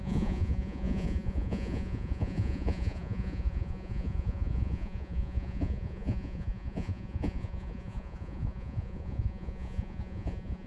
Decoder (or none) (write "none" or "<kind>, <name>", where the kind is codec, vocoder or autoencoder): vocoder, Vocos